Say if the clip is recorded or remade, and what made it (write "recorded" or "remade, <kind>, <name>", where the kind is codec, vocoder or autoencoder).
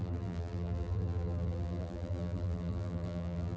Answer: remade, vocoder, BigVGAN v2